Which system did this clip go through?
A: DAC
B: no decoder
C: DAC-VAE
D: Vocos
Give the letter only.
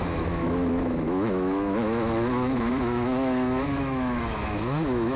C